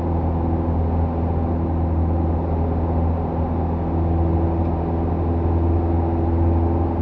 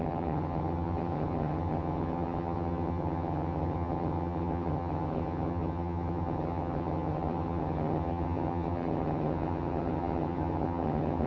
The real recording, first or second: first